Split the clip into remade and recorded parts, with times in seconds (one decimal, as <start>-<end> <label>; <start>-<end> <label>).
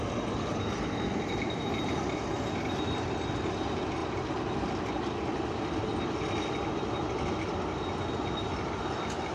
0.0-9.3 recorded